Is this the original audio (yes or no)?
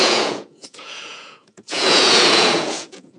no